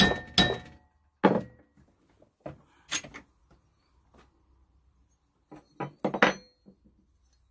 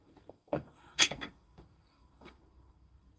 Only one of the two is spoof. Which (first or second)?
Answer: second